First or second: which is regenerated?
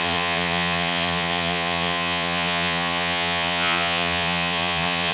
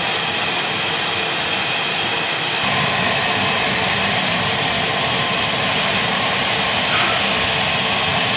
first